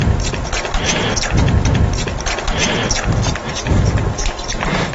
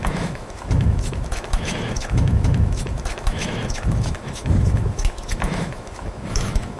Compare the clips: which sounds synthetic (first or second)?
second